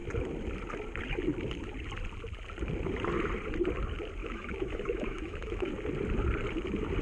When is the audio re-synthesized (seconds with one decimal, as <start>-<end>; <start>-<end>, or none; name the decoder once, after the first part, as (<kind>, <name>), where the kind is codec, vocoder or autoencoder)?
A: 4.2-5.7 (autoencoder, DAC-VAE)